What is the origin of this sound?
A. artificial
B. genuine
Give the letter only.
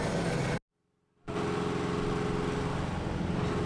B